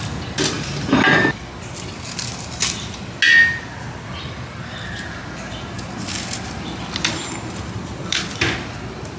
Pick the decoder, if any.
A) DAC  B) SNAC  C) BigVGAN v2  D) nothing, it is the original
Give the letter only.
D